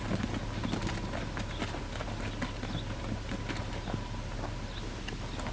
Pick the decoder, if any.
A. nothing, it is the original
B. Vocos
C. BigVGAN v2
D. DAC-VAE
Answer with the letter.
A